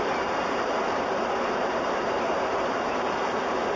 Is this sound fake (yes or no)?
yes